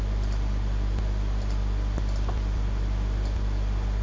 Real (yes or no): yes